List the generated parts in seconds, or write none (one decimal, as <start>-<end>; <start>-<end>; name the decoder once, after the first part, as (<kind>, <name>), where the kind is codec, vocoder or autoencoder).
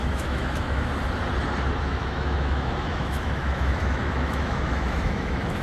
0.0-0.9 (autoencoder, DAC-VAE); 1.8-5.6